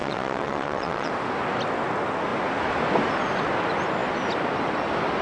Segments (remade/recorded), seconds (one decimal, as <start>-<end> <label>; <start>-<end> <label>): 0.0-1.1 remade; 1.1-5.2 recorded